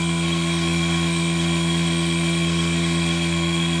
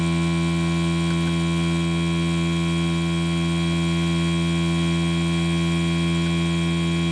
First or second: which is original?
second